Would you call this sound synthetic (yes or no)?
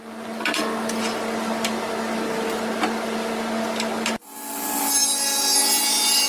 no